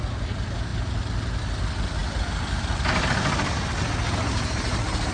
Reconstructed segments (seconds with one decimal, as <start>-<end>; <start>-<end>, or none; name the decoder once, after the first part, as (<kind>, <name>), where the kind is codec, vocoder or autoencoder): none